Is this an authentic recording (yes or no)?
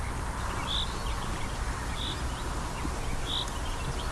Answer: yes